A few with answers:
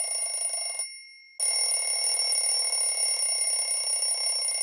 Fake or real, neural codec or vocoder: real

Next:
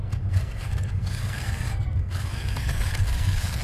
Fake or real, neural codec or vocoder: fake, codec, SNAC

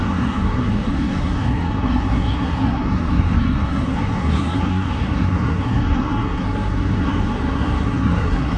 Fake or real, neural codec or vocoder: fake, codec, SNAC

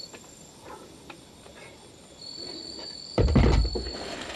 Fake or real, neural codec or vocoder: real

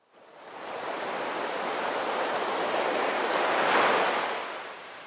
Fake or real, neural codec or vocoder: real